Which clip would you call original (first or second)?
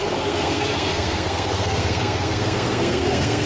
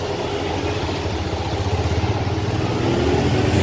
second